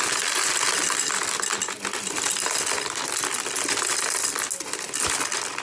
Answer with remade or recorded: recorded